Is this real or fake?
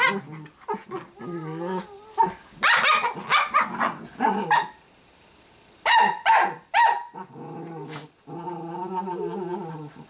real